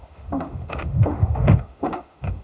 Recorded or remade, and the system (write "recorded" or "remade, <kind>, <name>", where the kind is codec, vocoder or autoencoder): remade, autoencoder, DAC-VAE